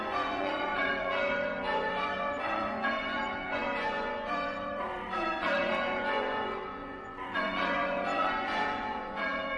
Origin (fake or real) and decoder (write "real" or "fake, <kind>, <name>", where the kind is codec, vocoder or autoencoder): fake, vocoder, Vocos